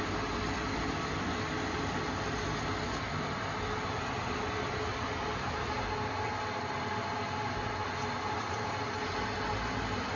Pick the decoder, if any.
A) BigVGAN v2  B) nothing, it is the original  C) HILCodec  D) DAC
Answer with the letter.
B